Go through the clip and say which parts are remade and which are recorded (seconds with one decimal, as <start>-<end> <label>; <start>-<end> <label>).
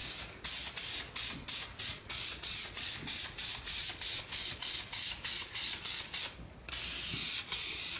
0.0-1.8 recorded; 1.8-6.2 remade; 6.2-7.3 recorded; 7.3-8.0 remade